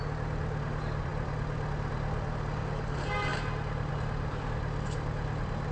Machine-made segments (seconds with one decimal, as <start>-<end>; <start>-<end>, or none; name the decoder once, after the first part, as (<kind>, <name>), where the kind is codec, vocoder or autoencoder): none

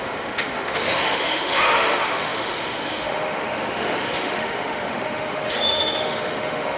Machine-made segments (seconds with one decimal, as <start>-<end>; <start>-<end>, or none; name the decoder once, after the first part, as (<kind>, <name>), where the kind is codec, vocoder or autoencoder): 0.0-6.8 (autoencoder, DAC-VAE)

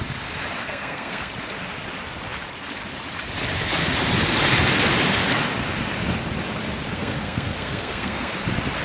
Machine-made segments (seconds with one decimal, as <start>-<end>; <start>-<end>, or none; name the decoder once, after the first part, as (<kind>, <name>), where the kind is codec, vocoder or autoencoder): 0.6-1.3 (codec, SNAC); 6.9-8.3

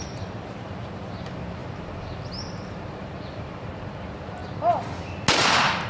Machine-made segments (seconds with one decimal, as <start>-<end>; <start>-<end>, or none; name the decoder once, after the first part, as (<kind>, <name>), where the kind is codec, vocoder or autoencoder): 0.0-4.4 (vocoder, BigVGAN v2); 5.5-5.9